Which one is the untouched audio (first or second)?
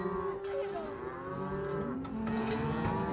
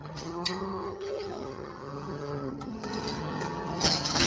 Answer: first